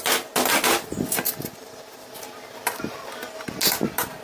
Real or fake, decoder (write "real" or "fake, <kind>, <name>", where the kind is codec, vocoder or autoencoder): real